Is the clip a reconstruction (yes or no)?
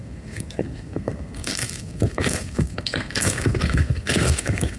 yes